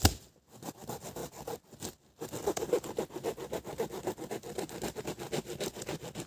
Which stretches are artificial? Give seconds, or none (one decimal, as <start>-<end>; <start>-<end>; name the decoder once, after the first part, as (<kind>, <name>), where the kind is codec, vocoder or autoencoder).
none